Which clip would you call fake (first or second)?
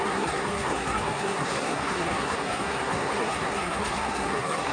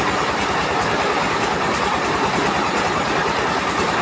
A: first